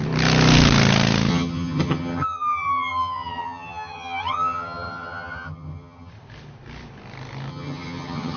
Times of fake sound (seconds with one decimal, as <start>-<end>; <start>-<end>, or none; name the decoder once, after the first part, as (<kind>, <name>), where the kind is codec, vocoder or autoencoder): 1.3-6.1 (vocoder, HiFi-GAN); 7.5-8.4